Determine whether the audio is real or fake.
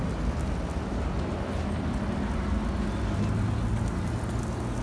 real